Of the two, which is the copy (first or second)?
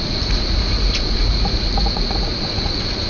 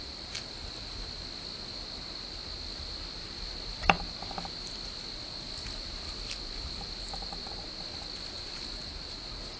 first